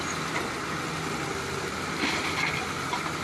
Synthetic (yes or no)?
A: no